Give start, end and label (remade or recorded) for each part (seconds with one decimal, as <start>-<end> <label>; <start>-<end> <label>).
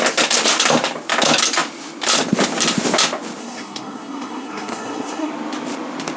0.0-3.4 recorded; 3.4-5.3 remade; 5.3-6.2 recorded